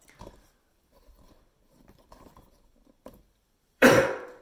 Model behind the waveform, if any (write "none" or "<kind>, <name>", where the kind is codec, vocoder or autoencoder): vocoder, BigVGAN v2